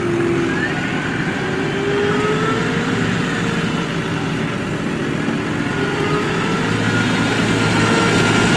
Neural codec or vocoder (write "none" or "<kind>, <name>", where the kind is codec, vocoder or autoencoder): none